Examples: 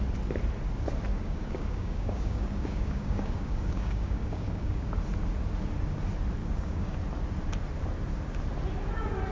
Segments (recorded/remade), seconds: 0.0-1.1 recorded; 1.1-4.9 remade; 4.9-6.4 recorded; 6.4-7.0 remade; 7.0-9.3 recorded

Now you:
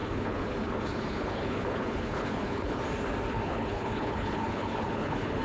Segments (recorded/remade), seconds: 0.0-2.8 remade; 2.8-3.3 recorded; 3.3-5.4 remade

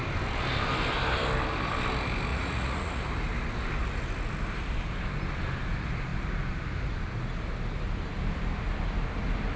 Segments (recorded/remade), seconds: 0.0-2.3 recorded; 2.3-3.0 remade; 3.0-9.6 recorded

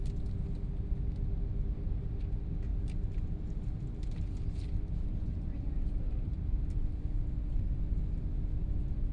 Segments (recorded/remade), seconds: 0.0-2.7 recorded; 2.7-7.0 remade; 7.0-9.1 recorded

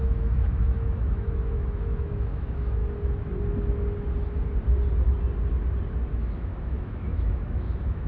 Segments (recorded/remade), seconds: 0.0-2.8 remade; 2.8-6.1 recorded; 6.1-8.1 remade

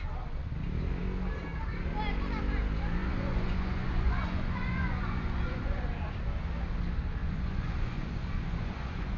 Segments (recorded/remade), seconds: 0.0-3.0 recorded; 3.0-6.2 remade; 6.2-7.2 recorded; 7.2-9.2 remade

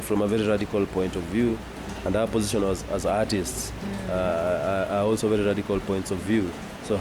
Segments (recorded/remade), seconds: 0.0-6.2 recorded; 6.2-7.0 remade